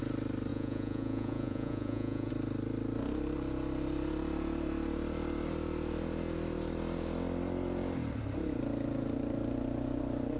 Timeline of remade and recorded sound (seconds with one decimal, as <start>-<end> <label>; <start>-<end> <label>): 0.0-0.5 recorded; 0.5-2.3 remade; 2.3-10.4 recorded